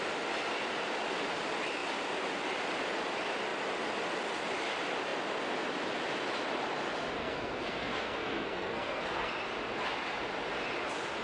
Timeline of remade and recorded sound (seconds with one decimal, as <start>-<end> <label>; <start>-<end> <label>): 0.0-7.2 recorded; 7.2-9.3 remade; 9.3-11.2 recorded